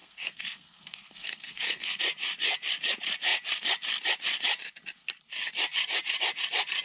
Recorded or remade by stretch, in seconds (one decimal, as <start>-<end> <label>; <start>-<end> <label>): 0.0-2.0 remade; 2.0-6.8 recorded